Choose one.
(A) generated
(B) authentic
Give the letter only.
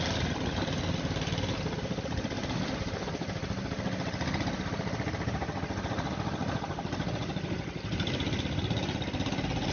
B